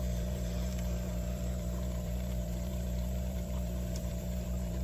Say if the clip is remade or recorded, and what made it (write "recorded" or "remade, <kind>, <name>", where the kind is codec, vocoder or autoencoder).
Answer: remade, vocoder, BigVGAN v2